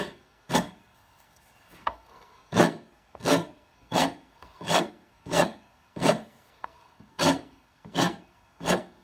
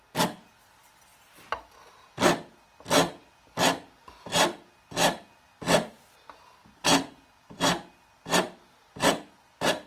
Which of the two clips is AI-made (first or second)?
first